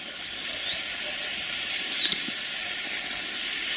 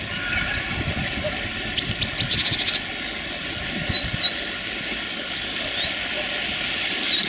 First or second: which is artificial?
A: first